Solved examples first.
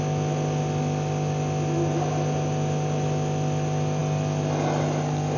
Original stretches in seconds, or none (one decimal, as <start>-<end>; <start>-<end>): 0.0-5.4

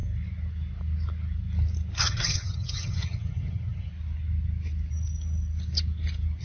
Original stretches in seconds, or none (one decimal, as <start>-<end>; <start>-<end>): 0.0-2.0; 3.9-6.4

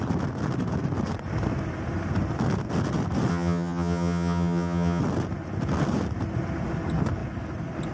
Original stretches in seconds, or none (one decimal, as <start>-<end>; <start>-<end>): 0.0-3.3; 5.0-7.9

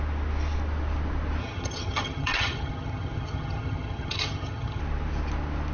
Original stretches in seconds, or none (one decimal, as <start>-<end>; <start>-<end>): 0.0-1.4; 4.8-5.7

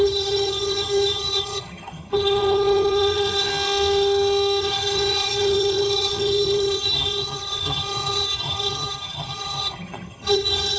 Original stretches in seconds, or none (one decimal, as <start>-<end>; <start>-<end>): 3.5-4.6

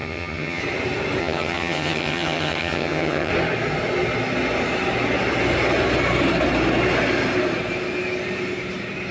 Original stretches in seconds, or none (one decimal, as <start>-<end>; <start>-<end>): 0.6-1.2; 3.3-9.1

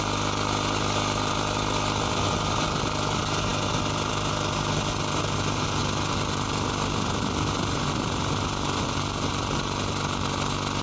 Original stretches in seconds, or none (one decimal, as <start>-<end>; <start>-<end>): 0.0-10.8

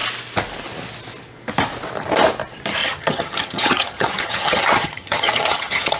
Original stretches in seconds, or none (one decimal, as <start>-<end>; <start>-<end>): 0.0-2.8